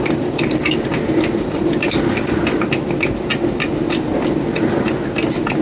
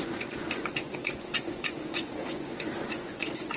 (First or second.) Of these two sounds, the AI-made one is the second